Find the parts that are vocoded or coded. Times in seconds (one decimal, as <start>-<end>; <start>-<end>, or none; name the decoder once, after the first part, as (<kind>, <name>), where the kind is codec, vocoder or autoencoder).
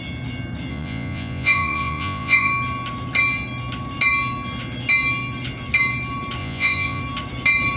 0.7-2.5 (vocoder, Vocos); 6.4-7.0